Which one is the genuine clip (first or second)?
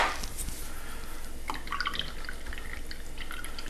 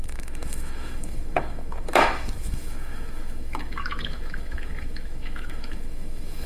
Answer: first